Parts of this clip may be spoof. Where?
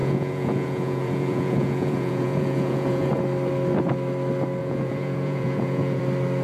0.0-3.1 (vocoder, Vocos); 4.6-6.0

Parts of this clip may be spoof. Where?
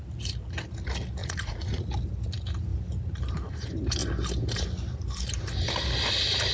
1.2-1.9 (vocoder, Vocos)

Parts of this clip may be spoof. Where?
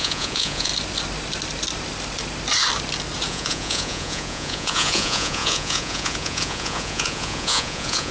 0.0-0.7 (vocoder, Vocos); 3.3-8.1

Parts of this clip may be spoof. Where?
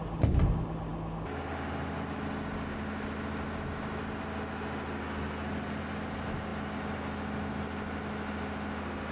none